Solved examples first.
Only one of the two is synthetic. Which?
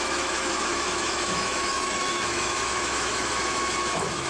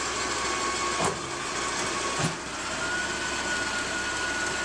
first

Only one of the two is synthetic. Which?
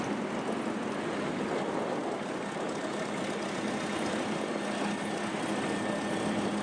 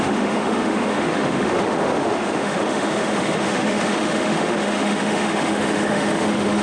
second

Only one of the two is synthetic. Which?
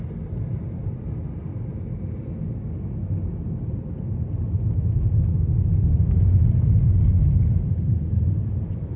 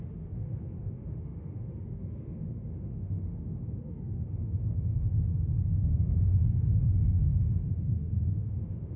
second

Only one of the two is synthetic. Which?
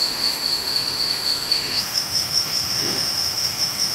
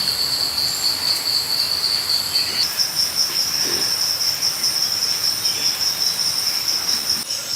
first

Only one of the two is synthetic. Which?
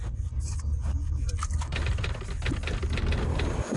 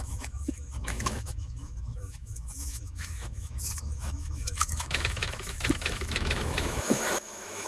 second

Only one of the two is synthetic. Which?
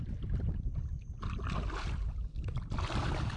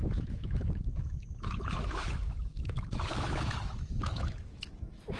second